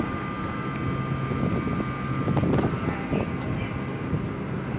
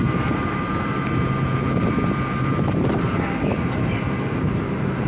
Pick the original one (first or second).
first